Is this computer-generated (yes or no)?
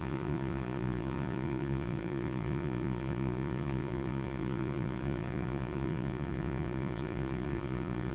yes